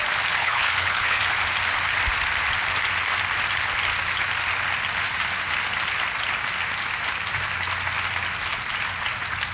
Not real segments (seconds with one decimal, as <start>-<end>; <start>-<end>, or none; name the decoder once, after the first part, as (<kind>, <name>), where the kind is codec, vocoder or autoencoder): 0.4-1.2 (codec, HILCodec)